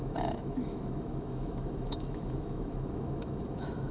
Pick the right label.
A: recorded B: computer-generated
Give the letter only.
B